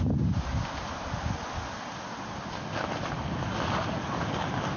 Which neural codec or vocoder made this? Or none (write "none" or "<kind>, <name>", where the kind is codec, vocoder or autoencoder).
none